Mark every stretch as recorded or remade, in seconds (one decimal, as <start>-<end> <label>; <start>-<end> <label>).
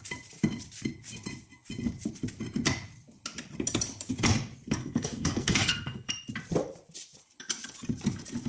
0.0-4.8 recorded; 4.8-6.1 remade; 6.1-8.5 recorded